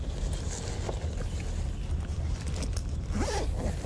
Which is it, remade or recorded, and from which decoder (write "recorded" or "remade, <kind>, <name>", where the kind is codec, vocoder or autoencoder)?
recorded